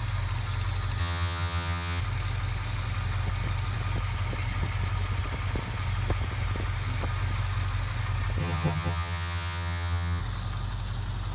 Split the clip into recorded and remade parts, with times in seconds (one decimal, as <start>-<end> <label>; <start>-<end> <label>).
0.0-1.0 recorded; 1.0-2.0 remade; 2.0-8.4 recorded; 8.4-10.2 remade; 10.2-11.3 recorded